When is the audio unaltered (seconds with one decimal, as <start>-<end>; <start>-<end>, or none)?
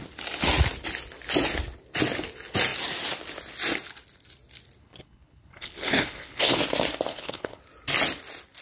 0.0-4.8; 6.6-7.1; 7.6-8.6